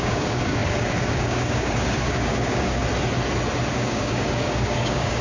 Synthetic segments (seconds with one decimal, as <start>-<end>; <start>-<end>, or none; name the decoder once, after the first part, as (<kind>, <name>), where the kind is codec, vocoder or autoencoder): 0.0-2.8 (codec, DAC); 3.7-5.2